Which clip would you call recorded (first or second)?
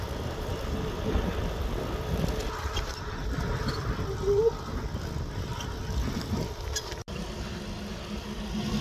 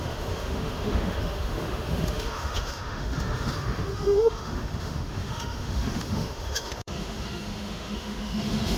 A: first